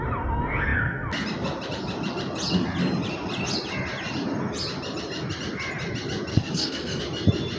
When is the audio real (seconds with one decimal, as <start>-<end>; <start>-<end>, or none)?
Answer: 0.0-6.3; 7.0-7.6